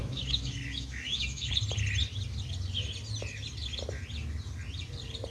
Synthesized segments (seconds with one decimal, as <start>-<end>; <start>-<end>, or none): 0.0-1.5